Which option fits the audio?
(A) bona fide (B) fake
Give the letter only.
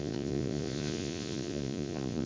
B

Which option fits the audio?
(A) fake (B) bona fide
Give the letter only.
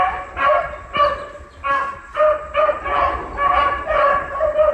B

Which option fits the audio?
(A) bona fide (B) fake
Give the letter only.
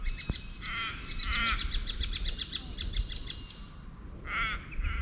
A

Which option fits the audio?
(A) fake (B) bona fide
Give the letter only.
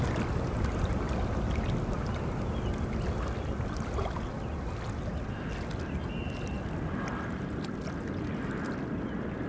B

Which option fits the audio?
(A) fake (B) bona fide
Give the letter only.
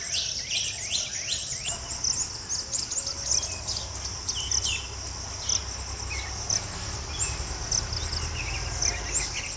B